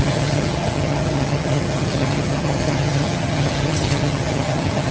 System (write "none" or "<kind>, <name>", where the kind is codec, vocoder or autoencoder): vocoder, HiFi-GAN